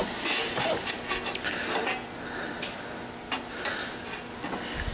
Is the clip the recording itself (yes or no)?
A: yes